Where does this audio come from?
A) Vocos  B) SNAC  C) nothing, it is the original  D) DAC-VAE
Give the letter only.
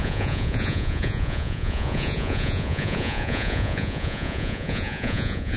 A